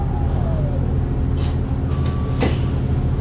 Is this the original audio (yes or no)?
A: yes